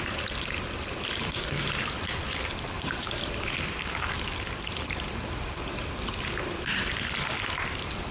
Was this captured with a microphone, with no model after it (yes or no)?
no